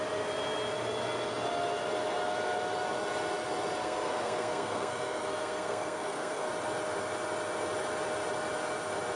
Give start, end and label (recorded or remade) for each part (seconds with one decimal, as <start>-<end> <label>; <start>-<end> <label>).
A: 0.0-3.8 recorded; 3.8-6.5 remade; 6.5-9.2 recorded